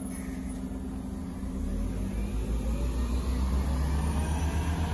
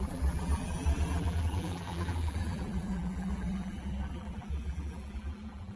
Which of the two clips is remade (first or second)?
second